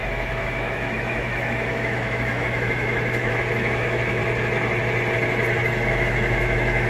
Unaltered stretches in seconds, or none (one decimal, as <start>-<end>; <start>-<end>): 4.2-5.9